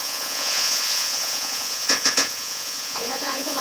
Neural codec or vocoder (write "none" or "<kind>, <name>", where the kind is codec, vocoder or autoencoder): vocoder, Vocos